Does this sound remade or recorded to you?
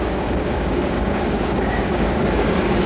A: remade